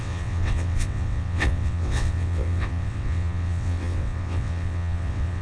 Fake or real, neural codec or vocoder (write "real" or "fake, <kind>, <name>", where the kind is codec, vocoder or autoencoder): fake, vocoder, WaveNeXt